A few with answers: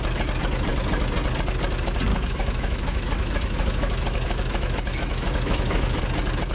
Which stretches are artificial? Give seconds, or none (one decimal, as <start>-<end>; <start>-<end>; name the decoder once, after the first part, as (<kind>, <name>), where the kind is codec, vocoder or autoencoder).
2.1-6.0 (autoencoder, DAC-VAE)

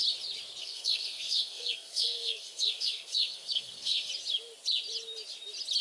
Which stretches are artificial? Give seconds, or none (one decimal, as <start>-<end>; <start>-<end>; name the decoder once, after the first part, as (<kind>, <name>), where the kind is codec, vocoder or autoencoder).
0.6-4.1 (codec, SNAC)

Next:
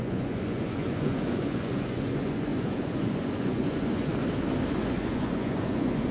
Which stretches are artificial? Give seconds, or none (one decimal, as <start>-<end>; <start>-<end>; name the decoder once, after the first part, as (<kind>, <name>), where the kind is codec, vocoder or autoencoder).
0.0-4.1 (vocoder, Vocos); 4.7-6.1

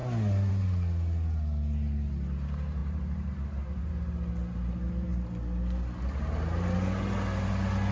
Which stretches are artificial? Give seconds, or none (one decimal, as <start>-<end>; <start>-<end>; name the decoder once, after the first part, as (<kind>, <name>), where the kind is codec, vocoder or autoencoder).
2.8-3.9 (vocoder, BigVGAN v2)

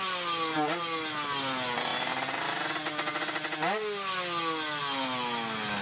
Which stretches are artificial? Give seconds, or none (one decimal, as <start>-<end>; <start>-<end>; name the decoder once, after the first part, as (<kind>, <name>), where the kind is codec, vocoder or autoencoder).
none